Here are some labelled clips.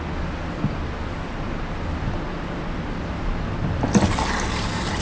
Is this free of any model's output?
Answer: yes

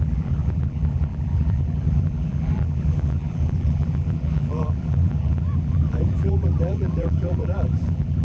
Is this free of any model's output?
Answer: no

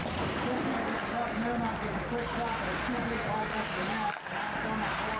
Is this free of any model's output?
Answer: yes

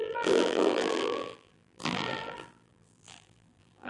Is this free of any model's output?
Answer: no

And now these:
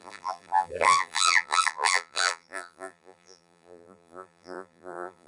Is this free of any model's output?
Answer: no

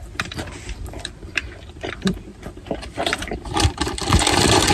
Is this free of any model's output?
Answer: no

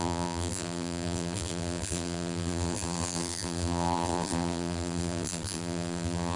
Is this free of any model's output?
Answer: no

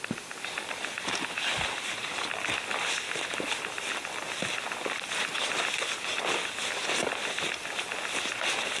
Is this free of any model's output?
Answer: yes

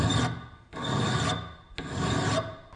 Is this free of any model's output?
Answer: yes